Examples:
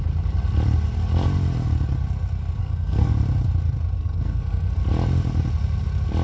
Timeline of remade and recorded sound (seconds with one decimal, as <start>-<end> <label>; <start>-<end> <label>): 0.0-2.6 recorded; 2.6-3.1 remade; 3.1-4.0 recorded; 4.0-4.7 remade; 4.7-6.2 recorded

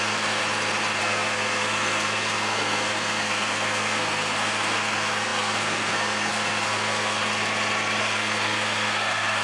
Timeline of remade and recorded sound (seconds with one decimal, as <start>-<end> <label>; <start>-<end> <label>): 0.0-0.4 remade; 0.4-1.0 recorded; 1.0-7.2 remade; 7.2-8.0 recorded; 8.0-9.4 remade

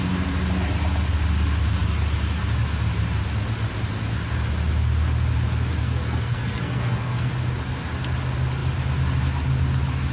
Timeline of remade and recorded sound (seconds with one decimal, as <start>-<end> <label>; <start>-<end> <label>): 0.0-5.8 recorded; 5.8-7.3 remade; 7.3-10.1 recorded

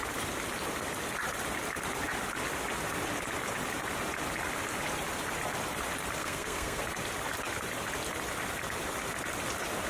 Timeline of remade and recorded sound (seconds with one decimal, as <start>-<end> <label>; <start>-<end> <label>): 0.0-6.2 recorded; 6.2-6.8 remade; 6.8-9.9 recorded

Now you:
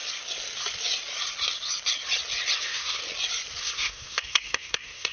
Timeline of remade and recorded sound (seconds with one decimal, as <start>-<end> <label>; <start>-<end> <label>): 0.0-2.6 recorded; 2.6-3.0 remade; 3.0-3.6 recorded; 3.6-5.1 remade

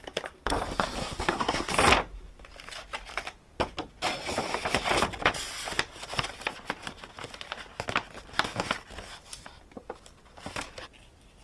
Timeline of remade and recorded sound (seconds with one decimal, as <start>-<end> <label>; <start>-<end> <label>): 0.0-1.0 recorded; 1.0-1.7 remade; 1.7-11.4 recorded

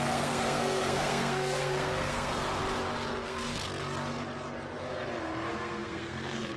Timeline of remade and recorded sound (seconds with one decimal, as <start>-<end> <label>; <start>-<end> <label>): 0.0-2.4 remade; 2.4-3.1 recorded; 3.1-3.6 remade; 3.6-5.5 recorded; 5.5-6.6 remade